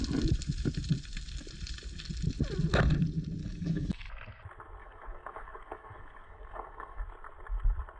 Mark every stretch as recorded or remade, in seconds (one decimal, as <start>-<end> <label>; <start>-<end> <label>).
0.0-3.4 recorded; 3.4-4.0 remade; 4.0-4.8 recorded; 4.8-7.0 remade; 7.0-8.0 recorded